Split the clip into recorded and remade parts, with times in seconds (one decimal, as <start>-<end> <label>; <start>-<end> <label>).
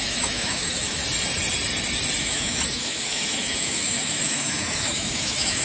0.0-1.0 remade; 1.0-2.2 recorded; 2.2-5.6 remade